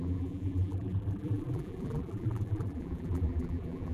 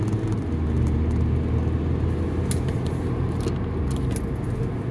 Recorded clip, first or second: second